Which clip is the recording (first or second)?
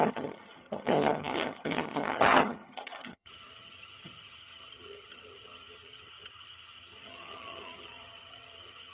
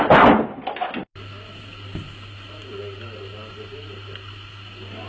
second